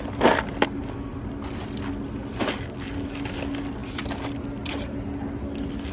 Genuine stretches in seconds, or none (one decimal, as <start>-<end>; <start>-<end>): 0.0-5.9